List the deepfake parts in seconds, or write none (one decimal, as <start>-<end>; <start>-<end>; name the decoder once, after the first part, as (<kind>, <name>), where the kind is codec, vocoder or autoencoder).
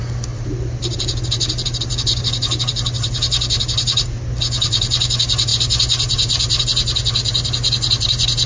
none